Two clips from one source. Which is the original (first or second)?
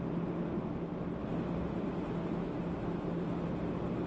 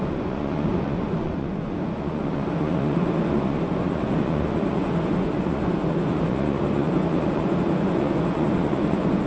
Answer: first